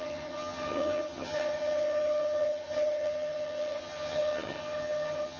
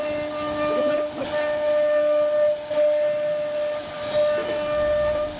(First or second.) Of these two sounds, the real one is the second